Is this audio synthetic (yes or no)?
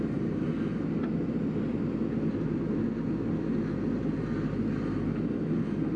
no